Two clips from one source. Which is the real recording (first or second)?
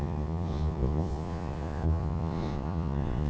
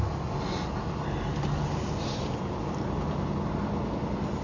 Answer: second